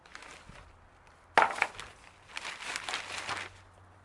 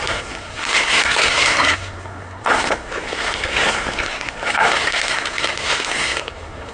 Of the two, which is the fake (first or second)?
second